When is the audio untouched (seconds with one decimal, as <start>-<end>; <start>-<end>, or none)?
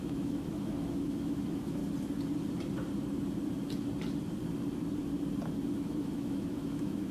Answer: 1.8-5.7